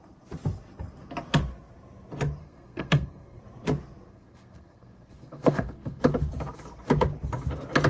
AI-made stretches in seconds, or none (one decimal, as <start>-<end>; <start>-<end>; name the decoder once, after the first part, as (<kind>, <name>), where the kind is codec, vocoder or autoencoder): 2.4-3.4 (codec, SNAC); 4.1-6.0